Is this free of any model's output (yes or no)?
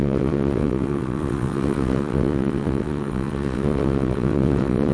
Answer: no